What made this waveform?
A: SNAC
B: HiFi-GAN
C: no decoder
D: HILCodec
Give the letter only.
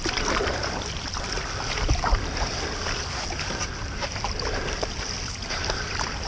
C